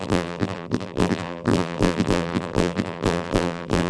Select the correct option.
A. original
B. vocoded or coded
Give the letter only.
B